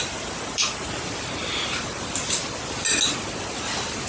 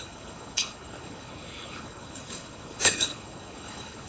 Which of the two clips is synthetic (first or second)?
second